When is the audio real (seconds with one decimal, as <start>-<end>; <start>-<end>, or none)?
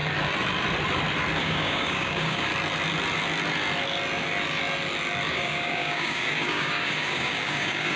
0.0-1.4; 2.5-5.3